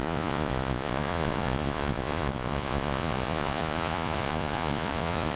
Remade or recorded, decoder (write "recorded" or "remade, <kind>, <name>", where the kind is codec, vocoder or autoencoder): remade, vocoder, Vocos